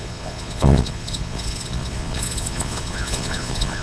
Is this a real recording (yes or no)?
no